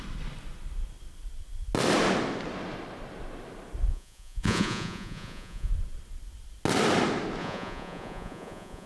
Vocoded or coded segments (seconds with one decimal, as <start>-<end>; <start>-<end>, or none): 3.9-5.7; 7.4-8.9